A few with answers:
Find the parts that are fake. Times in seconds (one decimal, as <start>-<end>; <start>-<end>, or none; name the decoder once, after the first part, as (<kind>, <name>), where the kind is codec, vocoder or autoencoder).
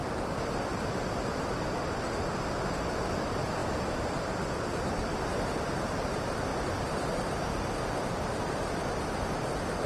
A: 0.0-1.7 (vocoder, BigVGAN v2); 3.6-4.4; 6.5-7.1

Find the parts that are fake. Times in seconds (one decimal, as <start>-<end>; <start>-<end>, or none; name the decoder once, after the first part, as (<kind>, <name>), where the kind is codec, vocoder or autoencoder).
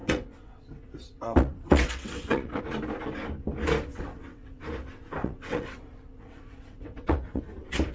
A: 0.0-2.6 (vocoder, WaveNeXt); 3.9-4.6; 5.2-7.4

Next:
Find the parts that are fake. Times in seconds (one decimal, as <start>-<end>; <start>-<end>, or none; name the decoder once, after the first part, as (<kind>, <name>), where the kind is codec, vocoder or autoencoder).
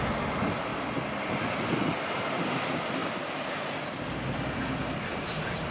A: none